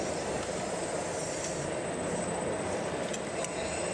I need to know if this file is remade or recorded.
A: recorded